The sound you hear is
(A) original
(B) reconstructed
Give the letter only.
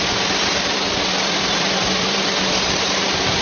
A